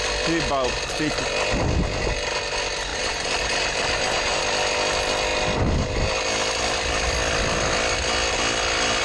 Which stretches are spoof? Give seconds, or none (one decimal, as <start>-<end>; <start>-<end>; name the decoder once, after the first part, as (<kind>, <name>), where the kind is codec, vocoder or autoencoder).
2.9-4.4 (vocoder, BigVGAN v2)